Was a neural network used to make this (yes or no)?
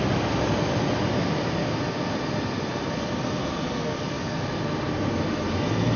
no